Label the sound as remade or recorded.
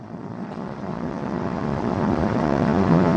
remade